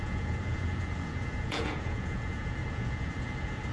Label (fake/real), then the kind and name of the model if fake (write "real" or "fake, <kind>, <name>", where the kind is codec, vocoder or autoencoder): fake, vocoder, Vocos